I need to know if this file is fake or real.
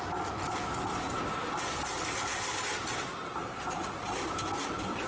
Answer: real